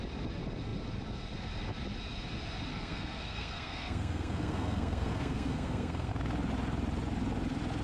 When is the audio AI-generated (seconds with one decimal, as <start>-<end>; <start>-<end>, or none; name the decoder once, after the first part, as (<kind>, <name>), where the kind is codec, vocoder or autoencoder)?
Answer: 2.7-6.1 (codec, SNAC)